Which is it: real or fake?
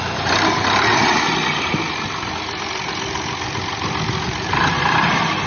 real